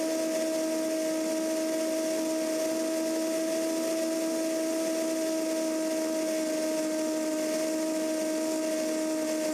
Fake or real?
real